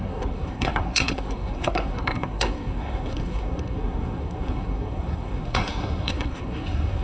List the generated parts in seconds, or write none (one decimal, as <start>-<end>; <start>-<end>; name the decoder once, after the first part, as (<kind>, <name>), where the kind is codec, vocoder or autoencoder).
0.0-7.0 (codec, SNAC)